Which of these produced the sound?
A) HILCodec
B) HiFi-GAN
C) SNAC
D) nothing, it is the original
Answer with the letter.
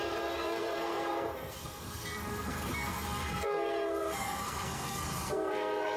C